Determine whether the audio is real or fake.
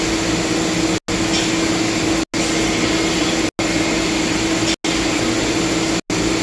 real